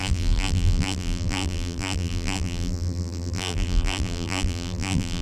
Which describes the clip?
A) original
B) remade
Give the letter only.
B